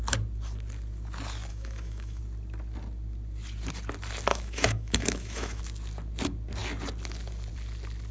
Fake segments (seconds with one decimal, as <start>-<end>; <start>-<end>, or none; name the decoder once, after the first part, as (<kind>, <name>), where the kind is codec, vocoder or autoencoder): 1.5-2.2 (autoencoder, DAC-VAE); 4.3-5.6